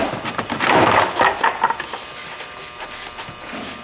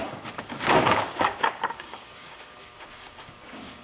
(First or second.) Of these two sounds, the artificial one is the second